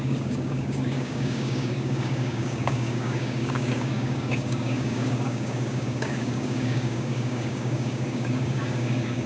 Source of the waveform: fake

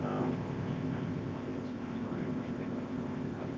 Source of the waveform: fake